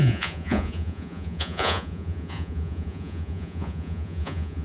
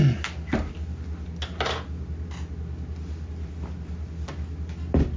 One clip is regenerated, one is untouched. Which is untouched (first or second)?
second